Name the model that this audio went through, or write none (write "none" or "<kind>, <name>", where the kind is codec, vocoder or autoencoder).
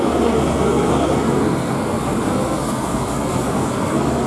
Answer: codec, SNAC